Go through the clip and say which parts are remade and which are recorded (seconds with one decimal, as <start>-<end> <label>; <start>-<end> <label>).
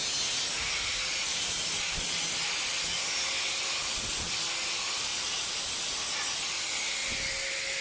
0.0-7.8 recorded